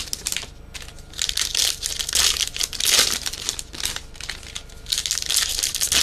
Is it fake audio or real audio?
real